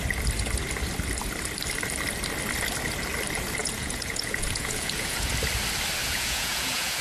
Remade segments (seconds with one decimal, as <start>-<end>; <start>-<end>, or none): 3.6-5.3; 6.0-7.0